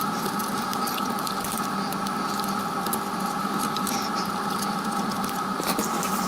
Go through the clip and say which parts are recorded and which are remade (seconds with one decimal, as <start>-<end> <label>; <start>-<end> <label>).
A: 0.0-0.7 remade; 0.7-4.5 recorded; 4.5-6.3 remade